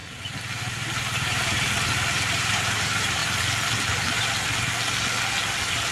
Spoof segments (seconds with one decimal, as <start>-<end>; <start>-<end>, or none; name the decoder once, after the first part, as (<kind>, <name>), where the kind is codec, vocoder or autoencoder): 0.6-3.2 (vocoder, BigVGAN v2)